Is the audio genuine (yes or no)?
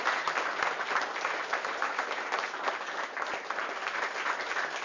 yes